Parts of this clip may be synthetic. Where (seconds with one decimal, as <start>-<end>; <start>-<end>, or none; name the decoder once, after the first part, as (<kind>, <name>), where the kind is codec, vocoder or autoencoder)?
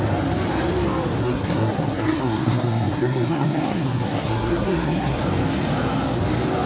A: 1.2-5.2 (codec, SNAC)